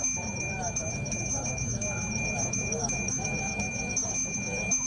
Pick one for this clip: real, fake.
fake